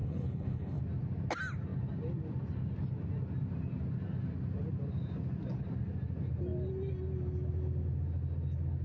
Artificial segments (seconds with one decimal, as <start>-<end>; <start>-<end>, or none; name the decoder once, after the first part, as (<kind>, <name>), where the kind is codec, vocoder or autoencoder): 0.0-0.8 (codec, HILCodec)